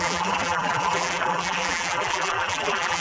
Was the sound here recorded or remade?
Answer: remade